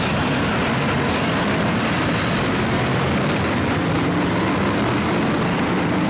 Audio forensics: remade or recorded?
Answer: recorded